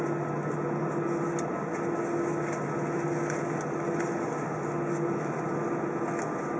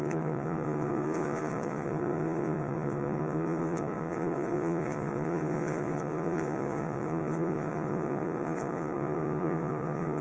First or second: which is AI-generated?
second